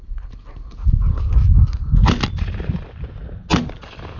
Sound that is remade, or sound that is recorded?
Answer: recorded